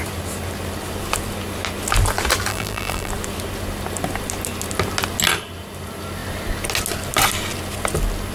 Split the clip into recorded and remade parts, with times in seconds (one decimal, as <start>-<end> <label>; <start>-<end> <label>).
0.0-2.5 recorded; 2.5-3.1 remade; 3.1-8.3 recorded